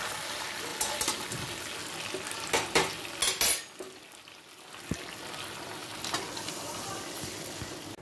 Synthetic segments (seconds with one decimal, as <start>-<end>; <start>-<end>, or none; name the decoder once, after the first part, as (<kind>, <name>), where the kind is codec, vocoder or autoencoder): none